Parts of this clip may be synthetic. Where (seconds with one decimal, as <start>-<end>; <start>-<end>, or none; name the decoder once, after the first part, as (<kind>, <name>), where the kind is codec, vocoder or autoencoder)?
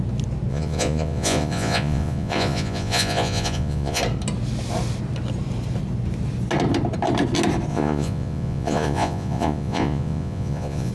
0.5-4.0 (vocoder, Vocos); 7.7-10.9